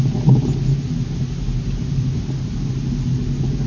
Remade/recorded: recorded